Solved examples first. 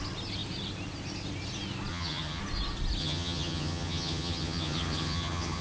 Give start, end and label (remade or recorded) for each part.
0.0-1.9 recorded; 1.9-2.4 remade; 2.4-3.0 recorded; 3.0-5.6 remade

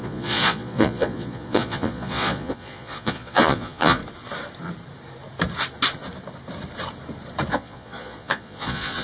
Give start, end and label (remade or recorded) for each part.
0.0-4.0 remade; 4.0-7.5 recorded; 7.5-9.0 remade

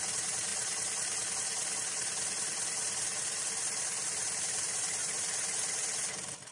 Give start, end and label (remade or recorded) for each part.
0.0-6.5 remade

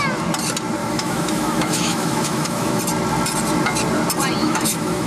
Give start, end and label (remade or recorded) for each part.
0.0-0.8 recorded; 0.8-2.8 remade; 2.8-4.4 recorded; 4.4-5.1 remade

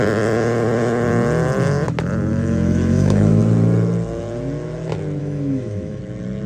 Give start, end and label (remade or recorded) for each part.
0.0-2.3 recorded; 2.3-3.4 remade; 3.4-5.2 recorded; 5.2-6.0 remade; 6.0-6.5 recorded

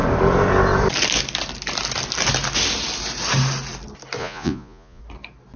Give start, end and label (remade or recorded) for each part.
0.0-4.2 recorded; 4.2-5.0 remade; 5.0-5.6 recorded

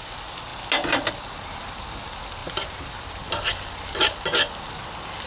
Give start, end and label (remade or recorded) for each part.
0.0-5.3 recorded